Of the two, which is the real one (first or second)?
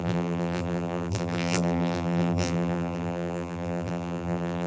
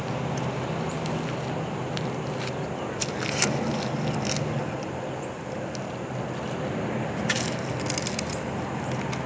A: second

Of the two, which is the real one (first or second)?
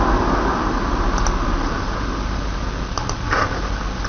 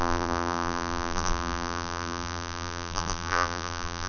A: first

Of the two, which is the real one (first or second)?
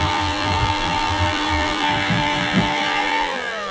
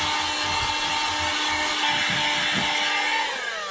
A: second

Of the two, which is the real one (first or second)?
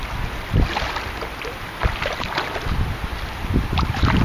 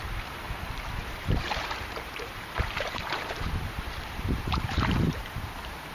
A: first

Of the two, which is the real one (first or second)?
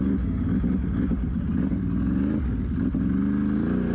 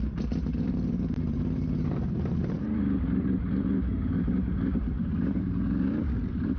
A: first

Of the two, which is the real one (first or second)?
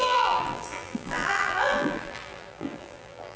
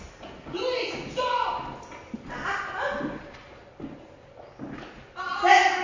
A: second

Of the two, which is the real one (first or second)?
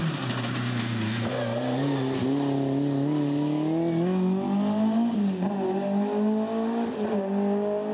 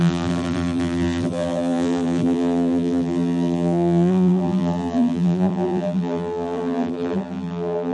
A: first